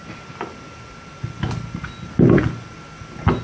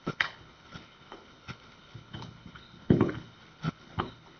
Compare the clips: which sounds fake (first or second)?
second